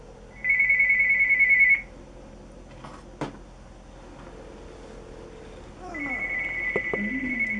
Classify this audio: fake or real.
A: real